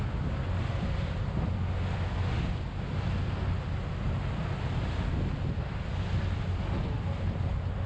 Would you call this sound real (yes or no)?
yes